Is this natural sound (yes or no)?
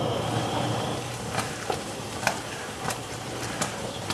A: no